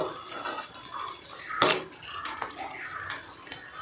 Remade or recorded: recorded